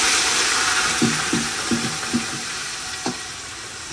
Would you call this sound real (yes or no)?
yes